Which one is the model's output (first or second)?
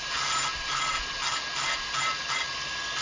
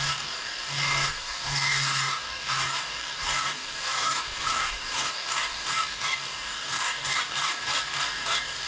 second